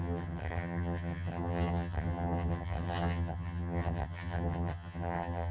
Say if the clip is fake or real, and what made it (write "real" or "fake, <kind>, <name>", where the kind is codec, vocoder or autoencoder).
fake, vocoder, HiFi-GAN